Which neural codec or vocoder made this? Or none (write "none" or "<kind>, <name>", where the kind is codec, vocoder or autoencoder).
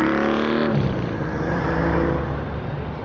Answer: none